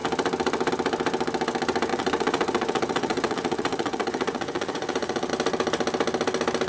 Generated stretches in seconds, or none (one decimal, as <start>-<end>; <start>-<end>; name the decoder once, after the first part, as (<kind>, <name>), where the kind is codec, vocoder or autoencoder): 1.9-5.3 (vocoder, Vocos)